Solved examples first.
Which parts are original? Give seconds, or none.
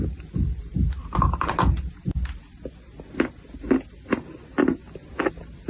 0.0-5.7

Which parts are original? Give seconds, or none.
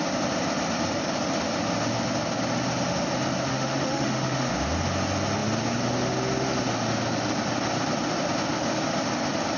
0.0-3.5; 4.5-9.6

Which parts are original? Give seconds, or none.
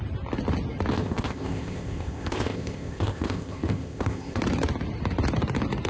0.0-0.9; 4.4-5.9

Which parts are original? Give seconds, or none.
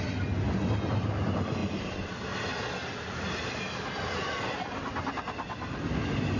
0.0-6.4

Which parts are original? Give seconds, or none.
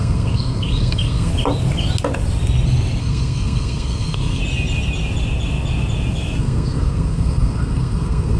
1.3-3.0; 4.4-6.4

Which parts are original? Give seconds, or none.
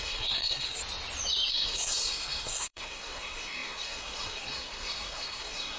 0.8-1.5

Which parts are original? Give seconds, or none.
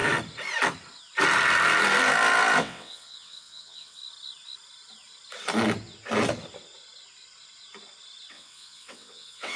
0.0-2.6; 4.0-8.3